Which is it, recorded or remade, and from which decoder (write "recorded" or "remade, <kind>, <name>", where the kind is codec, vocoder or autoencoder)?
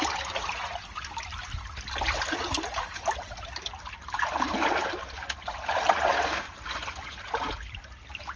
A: recorded